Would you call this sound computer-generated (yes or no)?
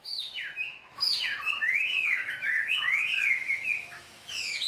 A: yes